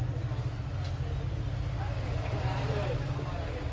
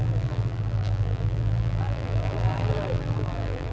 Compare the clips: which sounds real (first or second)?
first